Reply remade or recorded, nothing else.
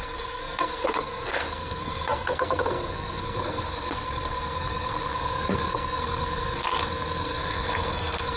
remade